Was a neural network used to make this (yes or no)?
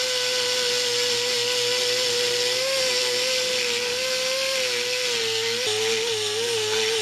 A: no